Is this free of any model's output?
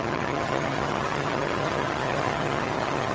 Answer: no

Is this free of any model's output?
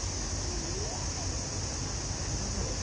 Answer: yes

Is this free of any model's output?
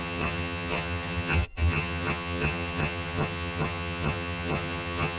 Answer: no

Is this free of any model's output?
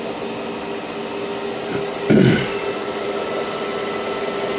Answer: yes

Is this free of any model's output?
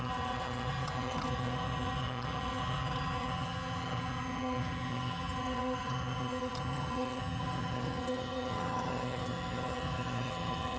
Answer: no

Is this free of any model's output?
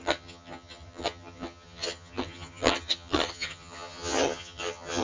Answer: no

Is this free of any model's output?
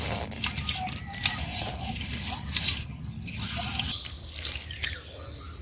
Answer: yes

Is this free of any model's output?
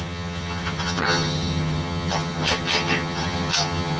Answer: no